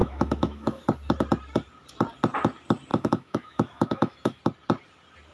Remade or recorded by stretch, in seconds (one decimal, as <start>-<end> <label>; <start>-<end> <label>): 0.0-0.8 remade; 0.8-2.9 recorded; 2.9-4.4 remade; 4.4-5.3 recorded